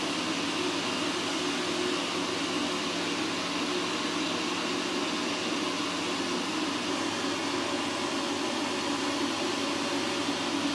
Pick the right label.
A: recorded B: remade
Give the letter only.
A